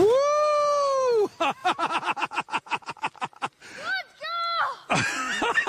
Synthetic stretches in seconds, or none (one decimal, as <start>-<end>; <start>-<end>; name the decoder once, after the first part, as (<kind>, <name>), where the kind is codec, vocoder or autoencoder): 1.6-2.9 (vocoder, Vocos)